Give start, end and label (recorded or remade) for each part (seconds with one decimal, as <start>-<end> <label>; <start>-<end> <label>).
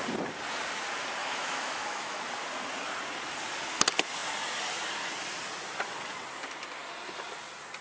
0.0-1.2 recorded; 1.2-2.2 remade; 2.2-7.8 recorded